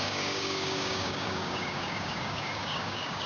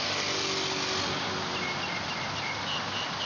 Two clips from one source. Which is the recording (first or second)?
second